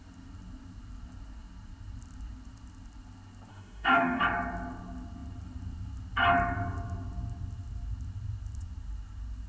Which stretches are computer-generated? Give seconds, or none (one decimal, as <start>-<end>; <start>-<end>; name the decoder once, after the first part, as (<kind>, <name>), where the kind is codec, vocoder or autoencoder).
3.5-4.2 (autoencoder, DAC-VAE)